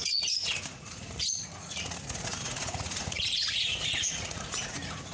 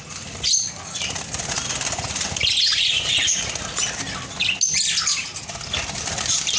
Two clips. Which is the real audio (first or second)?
second